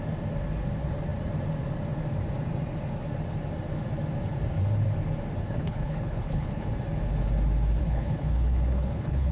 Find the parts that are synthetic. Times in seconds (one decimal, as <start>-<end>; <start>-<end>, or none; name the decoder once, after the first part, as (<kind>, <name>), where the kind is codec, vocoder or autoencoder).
5.4-6.7 (codec, HILCodec); 7.8-9.3

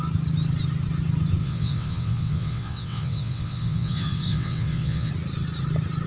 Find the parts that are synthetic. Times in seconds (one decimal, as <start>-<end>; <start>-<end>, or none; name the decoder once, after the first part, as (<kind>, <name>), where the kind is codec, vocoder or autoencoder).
1.4-5.1 (vocoder, WaveNeXt)